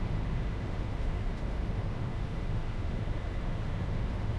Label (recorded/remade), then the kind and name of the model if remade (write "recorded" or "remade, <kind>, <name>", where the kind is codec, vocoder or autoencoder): remade, autoencoder, DAC-VAE